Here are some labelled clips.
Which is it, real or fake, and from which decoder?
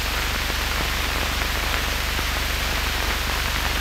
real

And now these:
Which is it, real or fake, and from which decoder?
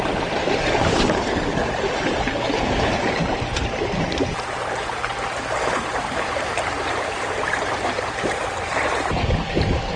fake, vocoder, BigVGAN v2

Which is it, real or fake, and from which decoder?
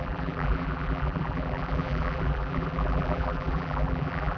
fake, vocoder, BigVGAN v2